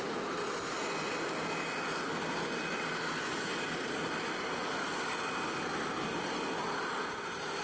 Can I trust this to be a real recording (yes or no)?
yes